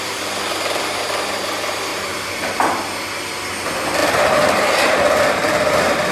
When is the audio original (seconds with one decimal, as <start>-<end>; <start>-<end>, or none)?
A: 0.0-1.9; 2.4-4.0